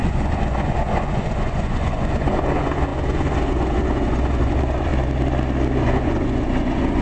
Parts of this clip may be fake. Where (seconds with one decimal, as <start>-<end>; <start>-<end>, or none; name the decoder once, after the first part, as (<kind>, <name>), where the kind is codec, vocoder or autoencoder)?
0.0-4.9 (vocoder, Vocos); 5.8-7.0